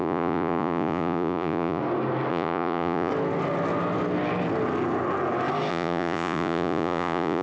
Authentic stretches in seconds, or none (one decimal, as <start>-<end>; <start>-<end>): 1.8-2.3; 3.1-5.7